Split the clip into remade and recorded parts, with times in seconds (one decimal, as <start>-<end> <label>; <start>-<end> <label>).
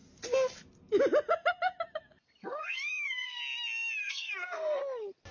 0.0-2.4 recorded; 2.4-3.4 remade; 3.4-4.0 recorded; 4.0-4.8 remade; 4.8-5.3 recorded